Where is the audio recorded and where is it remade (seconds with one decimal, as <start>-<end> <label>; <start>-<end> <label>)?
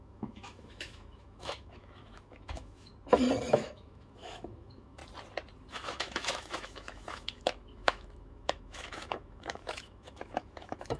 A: 0.0-2.9 remade; 2.9-3.5 recorded; 3.5-5.0 remade; 5.0-5.7 recorded; 5.7-11.0 remade